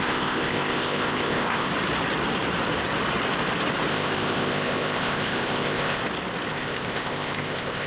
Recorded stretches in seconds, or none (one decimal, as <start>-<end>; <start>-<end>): 1.7-3.9; 6.0-6.5